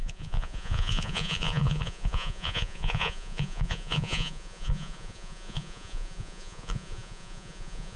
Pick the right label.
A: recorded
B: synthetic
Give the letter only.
B